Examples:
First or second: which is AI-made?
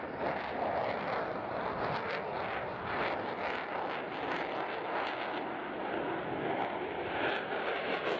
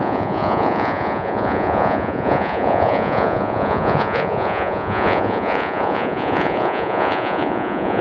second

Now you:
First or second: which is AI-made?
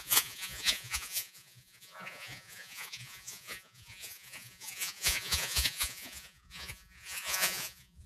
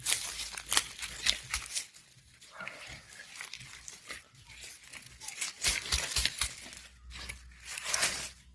first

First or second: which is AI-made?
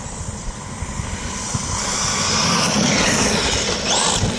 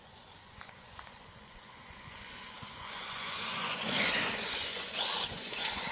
second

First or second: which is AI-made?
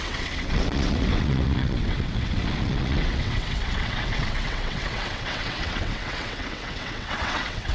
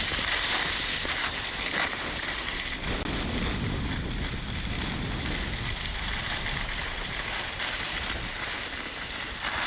first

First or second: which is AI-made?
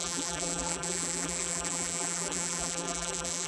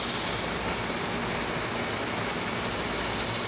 first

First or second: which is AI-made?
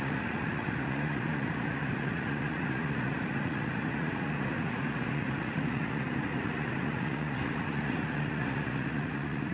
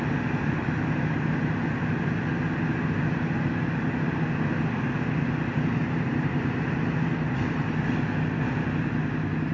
first